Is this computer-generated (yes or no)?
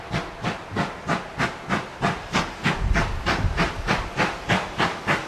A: no